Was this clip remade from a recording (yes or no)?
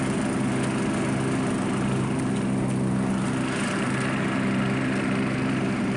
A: no